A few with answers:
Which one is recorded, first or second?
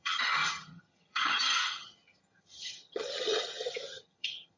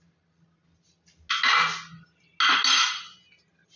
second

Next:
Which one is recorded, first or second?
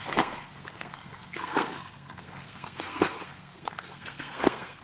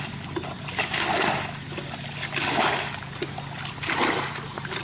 second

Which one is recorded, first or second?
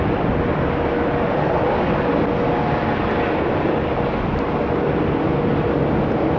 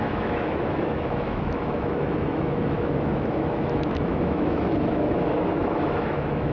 first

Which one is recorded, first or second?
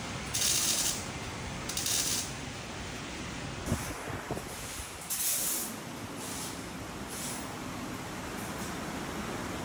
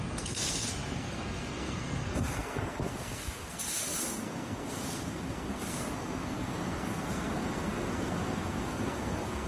first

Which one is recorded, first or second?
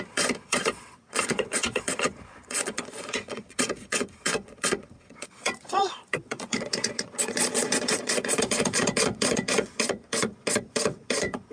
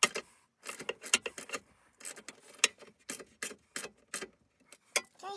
second